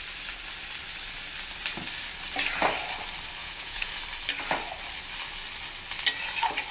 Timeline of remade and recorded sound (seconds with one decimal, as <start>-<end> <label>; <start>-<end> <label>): 0.0-3.4 recorded; 3.4-3.9 remade; 3.9-6.7 recorded